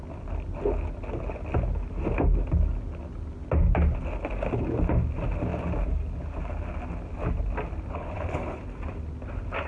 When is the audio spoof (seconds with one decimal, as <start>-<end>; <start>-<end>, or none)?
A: 7.9-8.6